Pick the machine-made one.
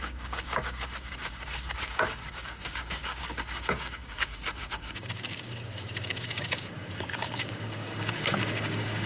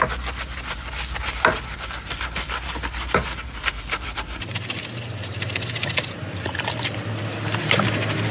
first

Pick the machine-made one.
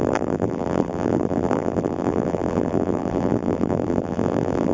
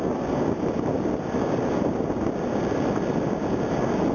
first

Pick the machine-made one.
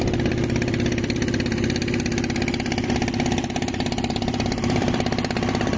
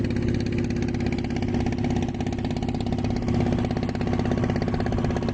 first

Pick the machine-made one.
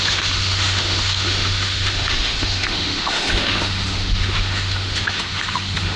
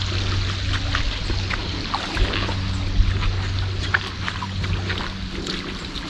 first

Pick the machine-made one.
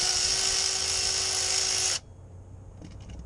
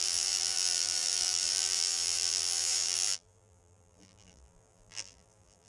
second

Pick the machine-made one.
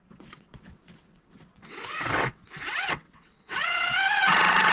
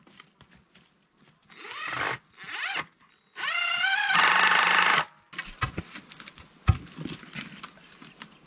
first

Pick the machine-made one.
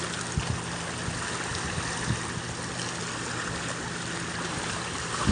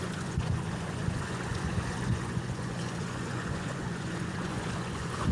second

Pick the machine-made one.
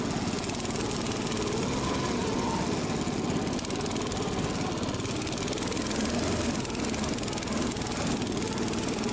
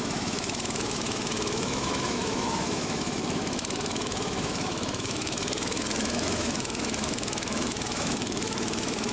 second